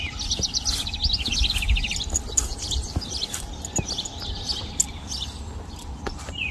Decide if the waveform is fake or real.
real